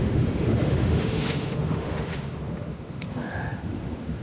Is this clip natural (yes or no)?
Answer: no